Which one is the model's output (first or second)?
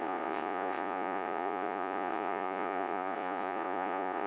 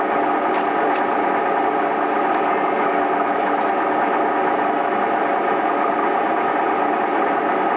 first